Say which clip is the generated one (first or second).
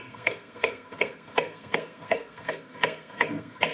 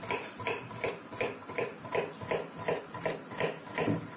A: first